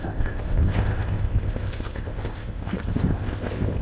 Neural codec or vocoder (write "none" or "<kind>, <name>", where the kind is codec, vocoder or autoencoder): codec, ZipCodec